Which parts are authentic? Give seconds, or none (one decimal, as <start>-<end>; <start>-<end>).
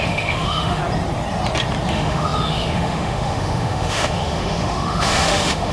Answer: 0.8-1.9